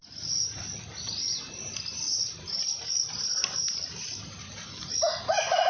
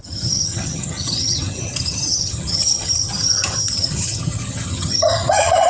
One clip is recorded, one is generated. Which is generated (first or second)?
second